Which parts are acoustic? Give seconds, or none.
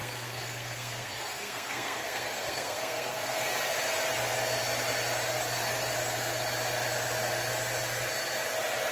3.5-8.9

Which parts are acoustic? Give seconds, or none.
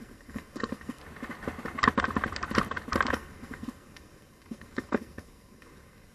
1.0-3.1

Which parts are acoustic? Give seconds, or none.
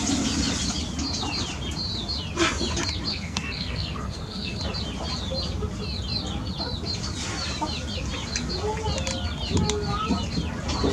0.0-3.1; 4.6-10.9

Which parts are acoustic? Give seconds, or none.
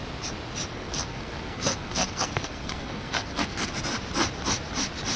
0.0-0.7; 3.7-5.2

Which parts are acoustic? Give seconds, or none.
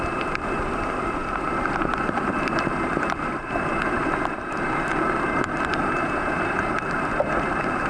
0.0-7.9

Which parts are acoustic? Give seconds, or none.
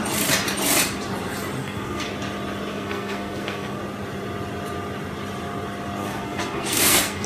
0.0-1.6; 2.1-2.7; 3.8-6.0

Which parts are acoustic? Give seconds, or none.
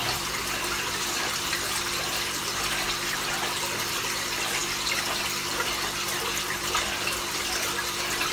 0.0-8.3